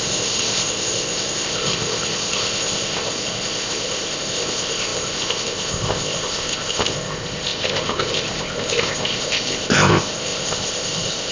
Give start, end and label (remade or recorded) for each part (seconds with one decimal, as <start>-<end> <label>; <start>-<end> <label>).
0.0-11.3 remade